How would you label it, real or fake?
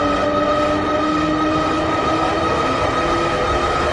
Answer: real